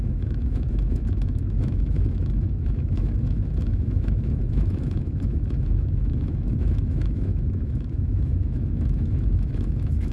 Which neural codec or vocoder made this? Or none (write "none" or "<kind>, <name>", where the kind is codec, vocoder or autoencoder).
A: autoencoder, DAC-VAE